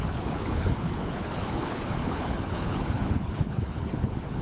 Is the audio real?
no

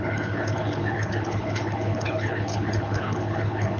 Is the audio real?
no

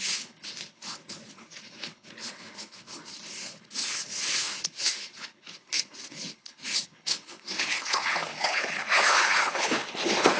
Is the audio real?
no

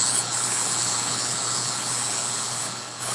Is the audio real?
no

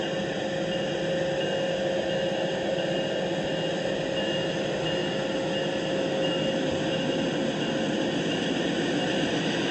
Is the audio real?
yes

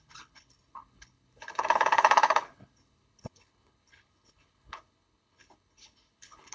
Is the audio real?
no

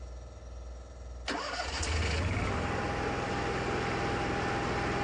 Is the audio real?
yes